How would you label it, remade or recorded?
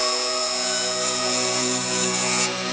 remade